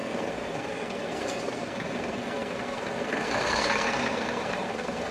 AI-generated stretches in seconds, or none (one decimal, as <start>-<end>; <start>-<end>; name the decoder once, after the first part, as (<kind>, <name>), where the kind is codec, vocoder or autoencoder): 0.0-5.1 (codec, SNAC)